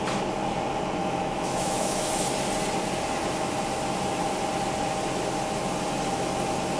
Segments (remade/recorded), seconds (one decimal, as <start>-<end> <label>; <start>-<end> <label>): 0.0-1.0 recorded; 1.0-2.1 remade; 2.1-6.8 recorded